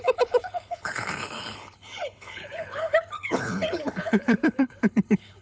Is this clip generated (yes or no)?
yes